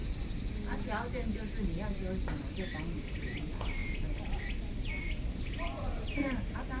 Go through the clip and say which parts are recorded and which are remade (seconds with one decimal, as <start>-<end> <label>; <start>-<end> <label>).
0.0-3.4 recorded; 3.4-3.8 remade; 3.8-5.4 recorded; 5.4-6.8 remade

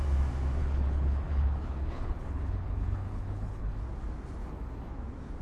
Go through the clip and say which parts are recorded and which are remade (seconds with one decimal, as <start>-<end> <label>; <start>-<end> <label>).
0.0-0.6 recorded; 0.6-3.8 remade; 3.8-4.4 recorded; 4.4-4.9 remade; 4.9-5.4 recorded

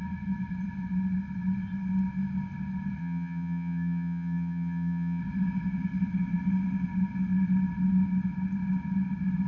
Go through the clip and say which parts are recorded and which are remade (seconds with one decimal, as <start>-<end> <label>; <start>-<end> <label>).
0.0-3.0 recorded; 3.0-5.2 remade; 5.2-9.5 recorded

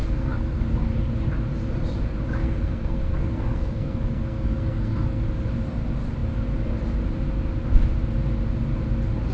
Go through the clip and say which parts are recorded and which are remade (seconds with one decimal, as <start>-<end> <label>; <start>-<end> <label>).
0.0-0.6 remade; 0.6-2.4 recorded; 2.4-5.2 remade; 5.2-9.3 recorded

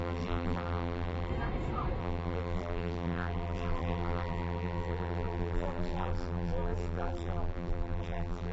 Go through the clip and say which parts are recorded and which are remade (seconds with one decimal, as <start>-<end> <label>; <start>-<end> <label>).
0.0-1.3 remade; 1.3-2.0 recorded; 2.0-8.5 remade

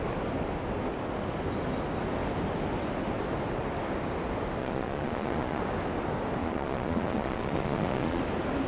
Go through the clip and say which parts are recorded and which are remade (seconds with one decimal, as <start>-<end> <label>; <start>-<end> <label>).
0.0-4.6 recorded; 4.6-5.6 remade; 5.6-6.4 recorded; 6.4-8.2 remade; 8.2-8.7 recorded

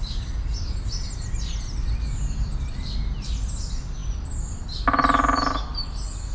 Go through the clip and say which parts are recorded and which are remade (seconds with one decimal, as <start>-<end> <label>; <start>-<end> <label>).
0.0-6.3 recorded